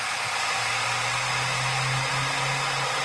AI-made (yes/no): no